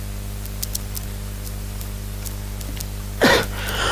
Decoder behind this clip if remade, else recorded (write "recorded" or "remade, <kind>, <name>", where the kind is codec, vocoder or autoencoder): recorded